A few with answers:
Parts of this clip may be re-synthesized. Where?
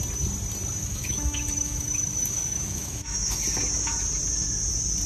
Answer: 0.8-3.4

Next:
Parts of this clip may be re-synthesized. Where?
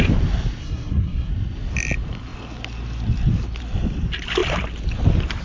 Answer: 0.6-1.3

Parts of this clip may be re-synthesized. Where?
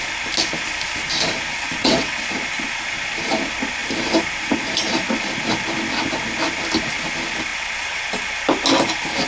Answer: 1.5-2.3; 7.5-8.1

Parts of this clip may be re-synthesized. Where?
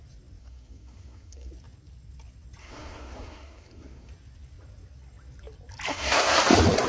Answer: 0.4-1.5; 2.6-4.1; 5.9-6.4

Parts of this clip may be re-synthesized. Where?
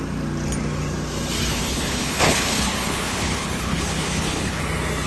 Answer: 1.5-4.6